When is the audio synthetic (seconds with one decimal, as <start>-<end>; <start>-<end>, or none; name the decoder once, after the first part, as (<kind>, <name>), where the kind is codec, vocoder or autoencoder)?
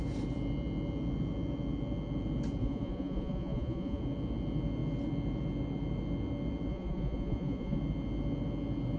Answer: 2.6-4.0 (vocoder, Vocos); 6.7-7.8